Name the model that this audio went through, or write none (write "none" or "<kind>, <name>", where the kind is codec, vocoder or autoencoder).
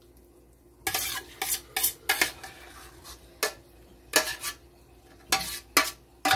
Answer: none